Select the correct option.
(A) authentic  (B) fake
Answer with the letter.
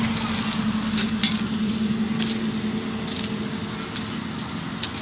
A